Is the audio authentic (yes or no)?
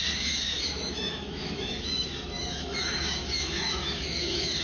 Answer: no